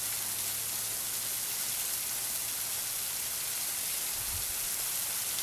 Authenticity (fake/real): real